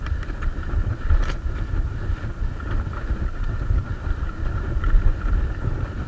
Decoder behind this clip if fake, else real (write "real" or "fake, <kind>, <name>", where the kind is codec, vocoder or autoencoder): real